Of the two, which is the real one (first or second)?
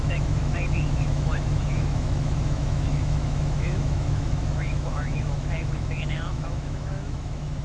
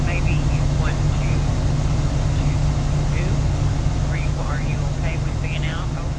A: second